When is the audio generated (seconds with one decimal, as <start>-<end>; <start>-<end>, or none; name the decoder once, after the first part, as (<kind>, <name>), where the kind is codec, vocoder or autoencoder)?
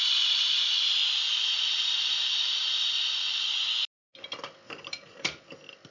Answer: none